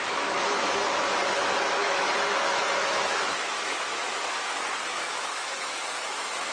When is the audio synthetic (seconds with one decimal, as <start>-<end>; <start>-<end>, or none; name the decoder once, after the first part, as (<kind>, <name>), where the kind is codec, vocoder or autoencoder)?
0.0-6.5 (autoencoder, DAC-VAE)